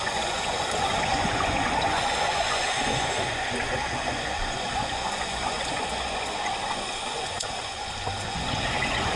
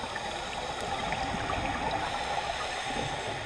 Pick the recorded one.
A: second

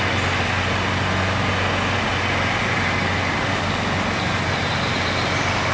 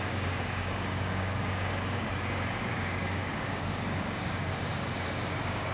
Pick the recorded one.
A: first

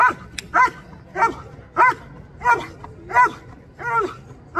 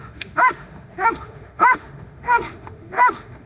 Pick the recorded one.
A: first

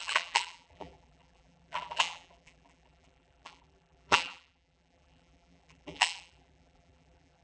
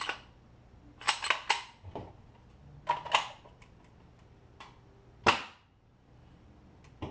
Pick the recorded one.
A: second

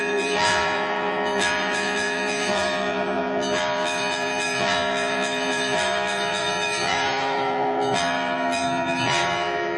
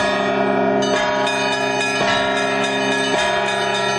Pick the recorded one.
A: second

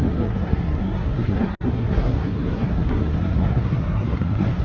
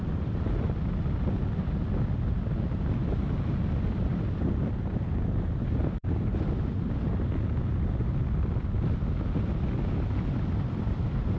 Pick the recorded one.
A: second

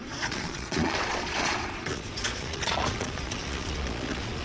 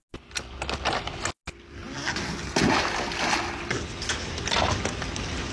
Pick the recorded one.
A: second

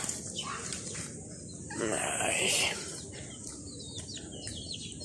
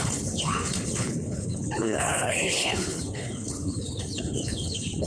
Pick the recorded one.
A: first